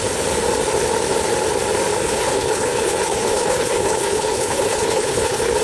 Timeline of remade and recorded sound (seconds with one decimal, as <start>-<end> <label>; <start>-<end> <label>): 0.0-2.0 recorded; 2.0-5.6 remade